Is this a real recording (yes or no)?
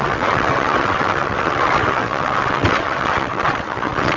no